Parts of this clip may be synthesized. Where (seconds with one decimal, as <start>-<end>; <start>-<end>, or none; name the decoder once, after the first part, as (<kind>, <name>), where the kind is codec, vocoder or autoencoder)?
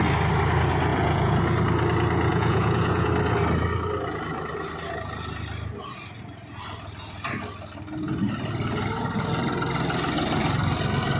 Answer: 0.9-1.4 (vocoder, Vocos); 2.3-3.1